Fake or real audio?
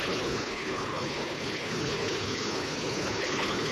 fake